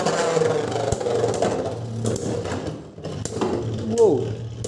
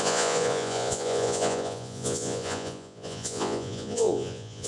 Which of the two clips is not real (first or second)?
second